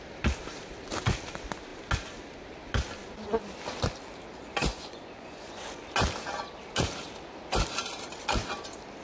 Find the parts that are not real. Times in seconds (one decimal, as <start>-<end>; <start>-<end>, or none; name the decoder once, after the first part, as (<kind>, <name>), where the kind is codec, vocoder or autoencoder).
4.7-5.8 (vocoder, Vocos)